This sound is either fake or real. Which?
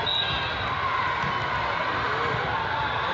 real